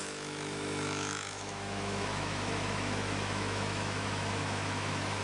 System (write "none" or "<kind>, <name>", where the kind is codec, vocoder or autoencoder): autoencoder, DAC-VAE